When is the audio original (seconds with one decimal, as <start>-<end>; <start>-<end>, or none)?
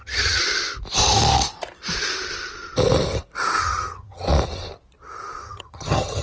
0.4-3.6; 4.3-5.4